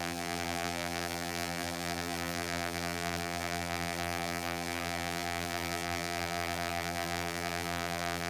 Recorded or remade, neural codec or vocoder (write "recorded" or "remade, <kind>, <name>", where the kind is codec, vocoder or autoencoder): remade, vocoder, BigVGAN v2